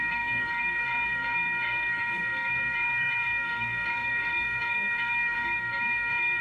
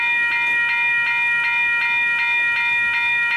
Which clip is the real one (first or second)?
second